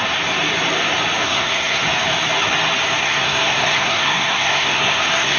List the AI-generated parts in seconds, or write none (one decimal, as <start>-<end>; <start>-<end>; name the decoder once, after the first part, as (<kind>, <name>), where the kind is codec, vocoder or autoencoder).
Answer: 1.2-1.8 (codec, SNAC); 3.0-5.4

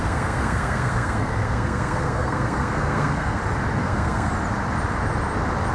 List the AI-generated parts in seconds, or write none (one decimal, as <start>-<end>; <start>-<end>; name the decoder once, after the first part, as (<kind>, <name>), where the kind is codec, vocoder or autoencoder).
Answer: 0.0-3.4 (codec, SNAC); 3.8-4.3

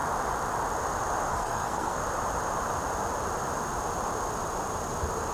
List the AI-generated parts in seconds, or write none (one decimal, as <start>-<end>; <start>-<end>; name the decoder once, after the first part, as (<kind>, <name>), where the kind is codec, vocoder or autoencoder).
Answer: 1.3-2.0 (codec, SNAC)

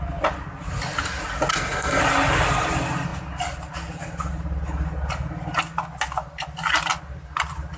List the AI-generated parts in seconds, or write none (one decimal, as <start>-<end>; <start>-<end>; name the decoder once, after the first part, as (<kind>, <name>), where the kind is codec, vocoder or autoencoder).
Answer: 1.5-2.0 (codec, SNAC)